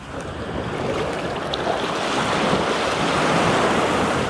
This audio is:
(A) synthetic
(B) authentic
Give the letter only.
B